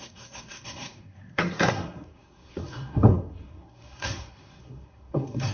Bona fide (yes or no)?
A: no